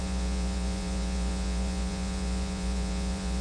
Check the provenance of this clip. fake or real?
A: fake